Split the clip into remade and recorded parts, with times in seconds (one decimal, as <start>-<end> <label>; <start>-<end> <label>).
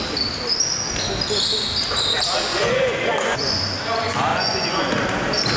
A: 0.0-2.5 recorded; 2.5-3.6 remade; 3.6-4.3 recorded; 4.3-4.9 remade; 4.9-5.6 recorded